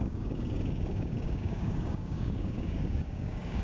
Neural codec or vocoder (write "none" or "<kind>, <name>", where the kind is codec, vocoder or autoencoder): codec, DAC